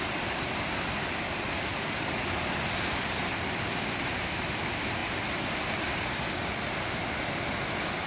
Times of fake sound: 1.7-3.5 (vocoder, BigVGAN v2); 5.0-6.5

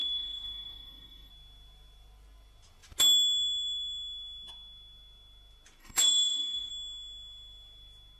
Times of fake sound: 0.0-1.3 (codec, DAC); 5.8-6.7

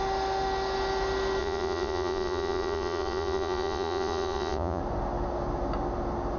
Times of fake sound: 1.4-4.8 (vocoder, Vocos)